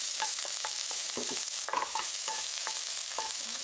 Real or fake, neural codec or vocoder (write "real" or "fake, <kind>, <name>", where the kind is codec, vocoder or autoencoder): fake, autoencoder, DAC-VAE